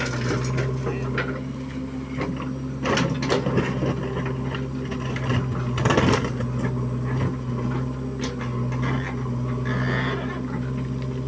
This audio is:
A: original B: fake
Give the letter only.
A